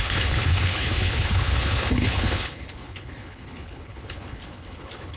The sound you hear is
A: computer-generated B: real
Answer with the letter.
A